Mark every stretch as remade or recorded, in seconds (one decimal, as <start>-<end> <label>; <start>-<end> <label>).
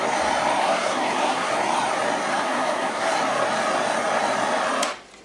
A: 0.0-0.6 recorded; 0.6-1.5 remade; 1.5-2.3 recorded; 2.3-3.1 remade; 3.1-5.2 recorded